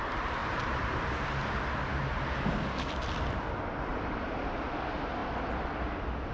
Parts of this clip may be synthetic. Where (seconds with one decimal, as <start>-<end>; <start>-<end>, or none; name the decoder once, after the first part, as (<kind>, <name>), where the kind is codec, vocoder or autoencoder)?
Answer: 0.4-0.9 (vocoder, BigVGAN v2); 3.9-4.4